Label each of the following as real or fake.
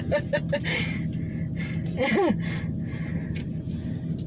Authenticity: real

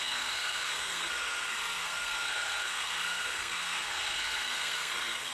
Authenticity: fake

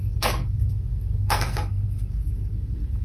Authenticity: fake